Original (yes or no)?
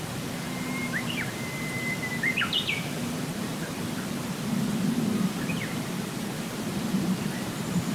no